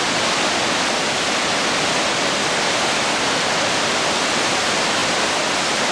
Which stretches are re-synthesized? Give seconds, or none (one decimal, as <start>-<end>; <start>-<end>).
none